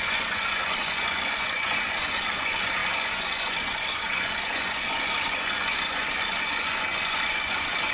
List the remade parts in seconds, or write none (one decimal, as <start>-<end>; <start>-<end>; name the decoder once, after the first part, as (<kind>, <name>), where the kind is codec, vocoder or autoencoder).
0.0-7.9 (vocoder, Vocos)